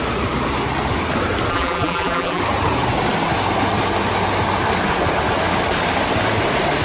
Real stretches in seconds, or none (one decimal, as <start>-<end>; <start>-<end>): 0.0-1.5; 2.4-6.8